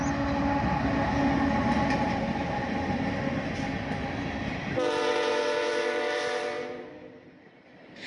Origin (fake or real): real